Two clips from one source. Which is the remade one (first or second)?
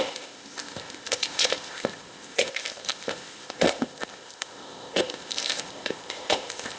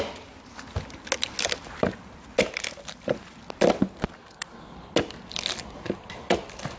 first